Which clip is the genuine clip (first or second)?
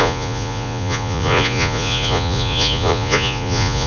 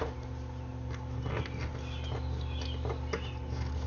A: second